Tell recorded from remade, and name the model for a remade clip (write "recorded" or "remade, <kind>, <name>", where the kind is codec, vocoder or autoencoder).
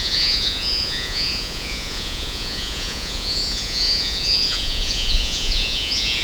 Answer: remade, vocoder, Vocos